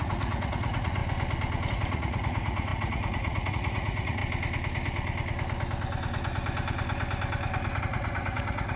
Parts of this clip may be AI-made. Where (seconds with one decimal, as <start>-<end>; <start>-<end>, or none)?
0.0-1.0; 1.7-4.2; 7.8-8.8